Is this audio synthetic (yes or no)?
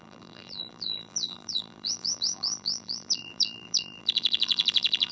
yes